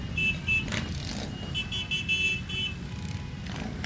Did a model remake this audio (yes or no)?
no